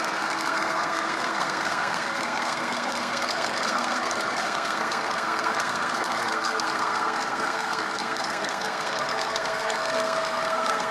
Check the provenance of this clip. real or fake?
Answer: fake